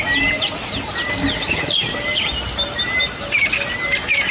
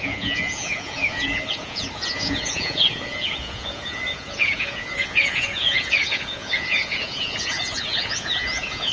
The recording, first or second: first